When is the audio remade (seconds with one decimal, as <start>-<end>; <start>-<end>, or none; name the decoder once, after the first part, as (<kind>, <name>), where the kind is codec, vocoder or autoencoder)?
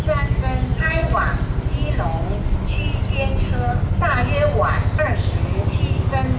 none